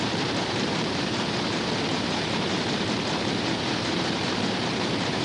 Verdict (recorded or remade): remade